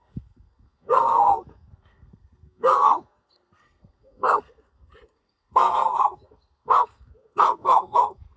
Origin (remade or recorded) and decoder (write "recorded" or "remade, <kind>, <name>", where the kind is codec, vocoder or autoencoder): remade, codec, SNAC